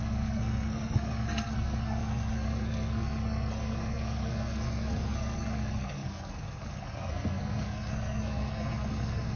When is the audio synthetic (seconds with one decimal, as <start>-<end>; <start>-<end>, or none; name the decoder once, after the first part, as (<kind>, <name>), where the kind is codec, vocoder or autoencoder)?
0.0-9.4 (codec, SNAC)